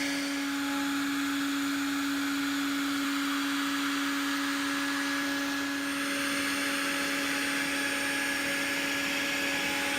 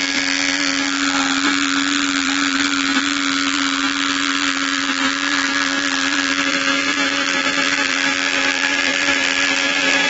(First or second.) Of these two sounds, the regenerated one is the second